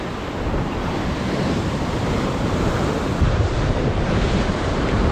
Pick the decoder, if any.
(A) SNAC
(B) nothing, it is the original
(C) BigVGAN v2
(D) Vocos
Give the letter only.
C